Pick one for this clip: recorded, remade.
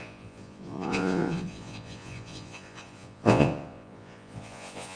remade